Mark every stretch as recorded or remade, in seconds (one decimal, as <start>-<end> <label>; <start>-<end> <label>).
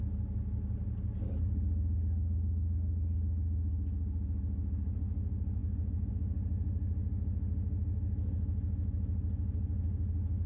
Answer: 0.0-10.5 recorded